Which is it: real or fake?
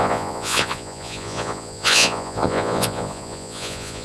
fake